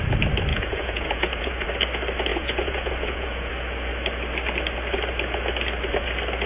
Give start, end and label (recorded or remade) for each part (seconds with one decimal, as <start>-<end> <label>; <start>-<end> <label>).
0.0-0.5 recorded; 0.5-1.7 remade; 1.7-2.3 recorded; 2.3-3.5 remade; 3.5-6.5 recorded